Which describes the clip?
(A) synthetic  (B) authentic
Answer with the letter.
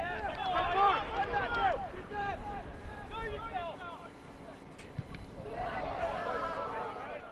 A